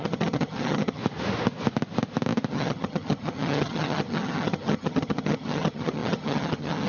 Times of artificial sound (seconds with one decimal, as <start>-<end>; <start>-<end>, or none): 0.0-1.0; 2.5-6.9

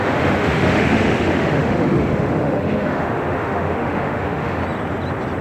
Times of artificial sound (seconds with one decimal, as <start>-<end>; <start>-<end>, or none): 0.0-4.6

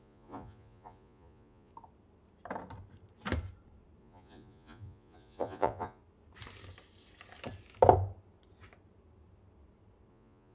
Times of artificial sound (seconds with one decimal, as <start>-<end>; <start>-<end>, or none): 0.0-1.7; 4.0-6.0; 10.1-10.5

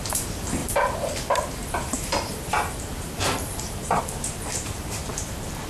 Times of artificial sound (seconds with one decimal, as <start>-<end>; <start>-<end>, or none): 0.0-5.7

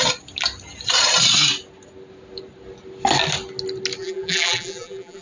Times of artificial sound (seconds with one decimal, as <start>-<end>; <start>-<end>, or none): 4.0-5.2